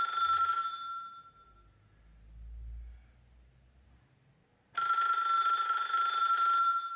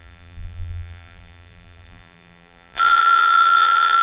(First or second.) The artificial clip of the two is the second